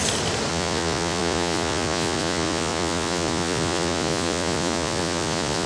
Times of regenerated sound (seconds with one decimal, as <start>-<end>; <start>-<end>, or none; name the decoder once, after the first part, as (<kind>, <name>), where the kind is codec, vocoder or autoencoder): 0.5-5.7 (vocoder, Vocos)